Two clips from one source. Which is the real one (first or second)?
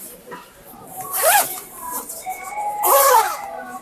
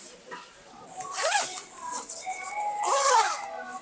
second